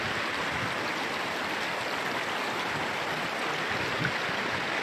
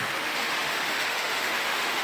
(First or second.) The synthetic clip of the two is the second